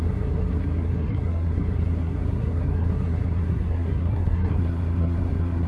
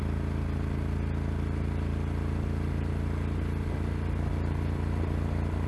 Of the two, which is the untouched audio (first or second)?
second